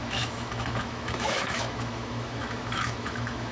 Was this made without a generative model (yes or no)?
no